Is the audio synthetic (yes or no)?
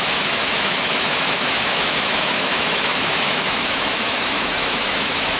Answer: yes